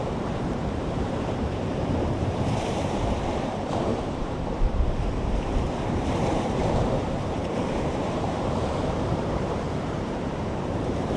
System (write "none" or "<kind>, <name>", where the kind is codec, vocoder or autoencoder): vocoder, BigVGAN v2